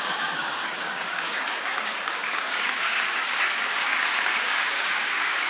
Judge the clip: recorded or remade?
remade